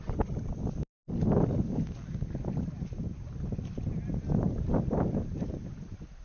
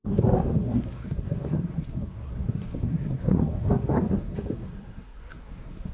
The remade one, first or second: second